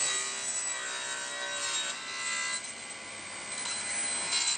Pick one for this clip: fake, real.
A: real